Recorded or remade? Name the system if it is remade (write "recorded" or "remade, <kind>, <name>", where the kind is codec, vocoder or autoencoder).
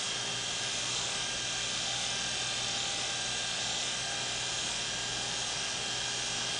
recorded